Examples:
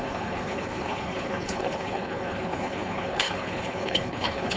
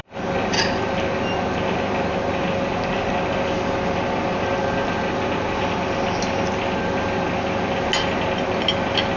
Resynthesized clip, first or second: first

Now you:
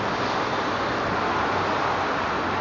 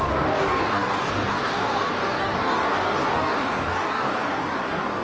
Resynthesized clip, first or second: second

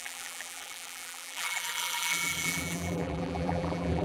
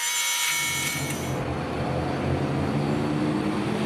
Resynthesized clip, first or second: first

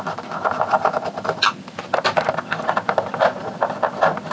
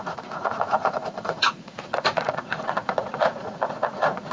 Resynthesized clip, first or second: second